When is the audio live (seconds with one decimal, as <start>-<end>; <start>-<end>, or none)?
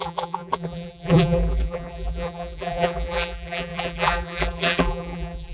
none